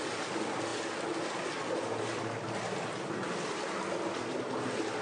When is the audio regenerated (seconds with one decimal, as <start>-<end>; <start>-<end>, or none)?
none